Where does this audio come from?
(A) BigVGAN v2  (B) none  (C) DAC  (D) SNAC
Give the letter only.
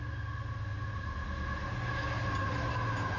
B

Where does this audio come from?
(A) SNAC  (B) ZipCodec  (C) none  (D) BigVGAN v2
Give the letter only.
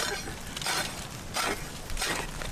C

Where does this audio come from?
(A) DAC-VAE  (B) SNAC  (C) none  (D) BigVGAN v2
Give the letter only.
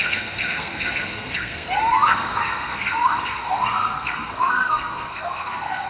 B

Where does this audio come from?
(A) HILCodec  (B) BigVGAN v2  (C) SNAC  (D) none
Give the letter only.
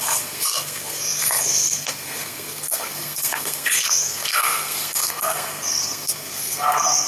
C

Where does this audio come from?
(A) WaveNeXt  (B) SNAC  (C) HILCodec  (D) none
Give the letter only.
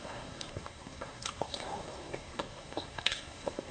B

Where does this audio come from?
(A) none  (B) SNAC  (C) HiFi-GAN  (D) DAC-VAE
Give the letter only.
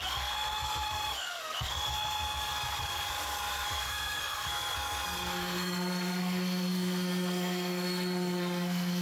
B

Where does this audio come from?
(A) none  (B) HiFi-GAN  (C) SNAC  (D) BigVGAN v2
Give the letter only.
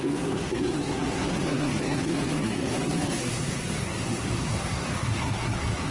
C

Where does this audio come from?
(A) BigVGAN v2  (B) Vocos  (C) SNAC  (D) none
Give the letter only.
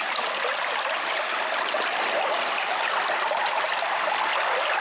D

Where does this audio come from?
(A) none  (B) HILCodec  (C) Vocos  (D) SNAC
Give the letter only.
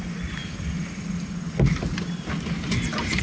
A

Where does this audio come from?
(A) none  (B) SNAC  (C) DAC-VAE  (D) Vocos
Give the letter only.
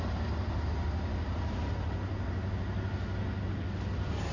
A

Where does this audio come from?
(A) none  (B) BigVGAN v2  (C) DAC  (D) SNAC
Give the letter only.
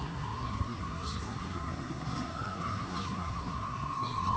D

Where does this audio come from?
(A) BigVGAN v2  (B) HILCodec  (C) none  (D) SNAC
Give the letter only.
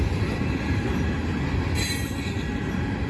C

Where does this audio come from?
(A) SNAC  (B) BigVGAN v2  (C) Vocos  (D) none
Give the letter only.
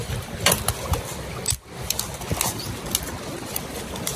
D